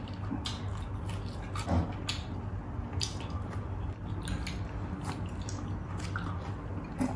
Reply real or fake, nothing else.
real